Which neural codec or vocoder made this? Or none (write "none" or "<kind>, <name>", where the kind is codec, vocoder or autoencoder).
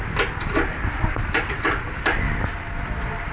none